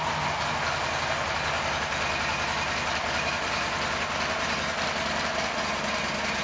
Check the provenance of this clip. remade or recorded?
recorded